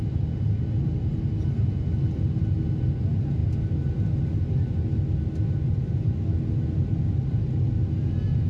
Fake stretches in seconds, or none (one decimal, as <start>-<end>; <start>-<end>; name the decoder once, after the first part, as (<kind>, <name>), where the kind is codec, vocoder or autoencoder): none